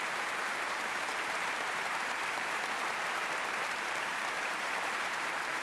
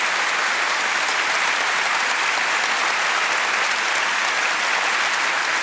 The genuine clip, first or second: second